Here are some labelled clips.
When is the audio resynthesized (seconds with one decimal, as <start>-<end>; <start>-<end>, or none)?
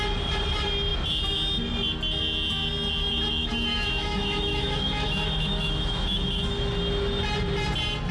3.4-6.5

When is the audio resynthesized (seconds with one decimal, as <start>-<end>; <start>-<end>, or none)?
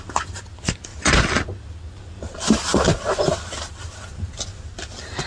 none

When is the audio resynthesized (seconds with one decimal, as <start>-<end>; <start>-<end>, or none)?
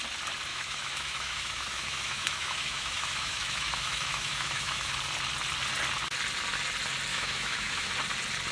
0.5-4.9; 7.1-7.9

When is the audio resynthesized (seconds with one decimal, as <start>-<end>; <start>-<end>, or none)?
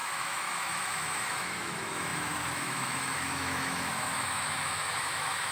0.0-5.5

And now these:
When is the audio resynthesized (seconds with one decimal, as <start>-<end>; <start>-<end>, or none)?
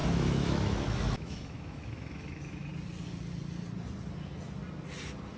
0.0-2.7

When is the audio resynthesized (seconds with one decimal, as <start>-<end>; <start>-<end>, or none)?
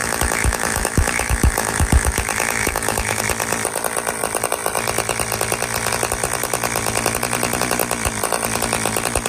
0.0-3.2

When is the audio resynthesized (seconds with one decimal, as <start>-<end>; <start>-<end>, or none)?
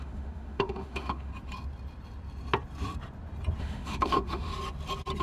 0.0-1.3; 3.6-4.5